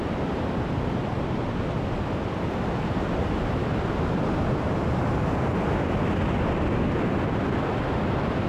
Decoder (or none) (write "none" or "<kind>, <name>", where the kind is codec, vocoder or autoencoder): none